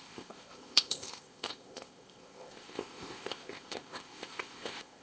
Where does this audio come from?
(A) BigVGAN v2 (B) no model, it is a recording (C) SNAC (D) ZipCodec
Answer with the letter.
D